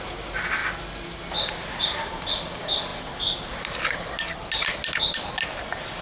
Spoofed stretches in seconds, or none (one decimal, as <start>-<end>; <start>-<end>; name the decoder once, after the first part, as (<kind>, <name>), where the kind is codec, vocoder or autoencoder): none